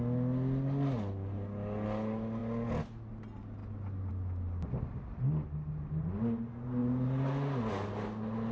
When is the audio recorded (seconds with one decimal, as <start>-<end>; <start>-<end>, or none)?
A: 0.0-8.5